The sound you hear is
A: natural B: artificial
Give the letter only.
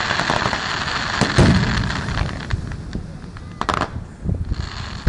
A